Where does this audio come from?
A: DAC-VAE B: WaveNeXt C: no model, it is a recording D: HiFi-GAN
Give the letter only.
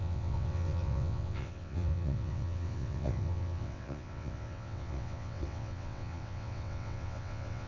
B